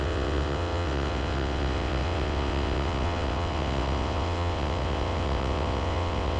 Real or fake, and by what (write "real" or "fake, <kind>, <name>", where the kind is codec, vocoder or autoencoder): fake, vocoder, WaveNeXt